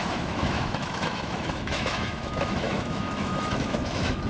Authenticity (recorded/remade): remade